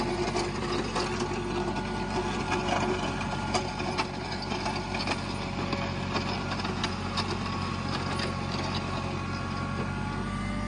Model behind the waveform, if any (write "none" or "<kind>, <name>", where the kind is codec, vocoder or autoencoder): none